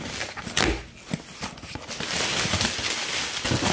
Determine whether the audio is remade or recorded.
recorded